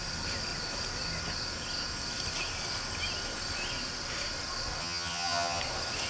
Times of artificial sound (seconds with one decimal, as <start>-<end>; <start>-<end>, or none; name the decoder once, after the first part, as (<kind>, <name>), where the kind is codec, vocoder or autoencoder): 4.8-5.6 (vocoder, HiFi-GAN)